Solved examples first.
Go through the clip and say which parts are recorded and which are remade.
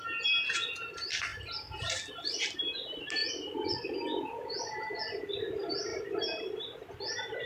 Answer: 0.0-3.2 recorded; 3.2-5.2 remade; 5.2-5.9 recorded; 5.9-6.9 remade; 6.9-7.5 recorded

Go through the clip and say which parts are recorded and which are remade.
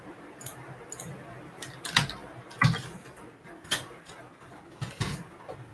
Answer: 0.0-5.7 recorded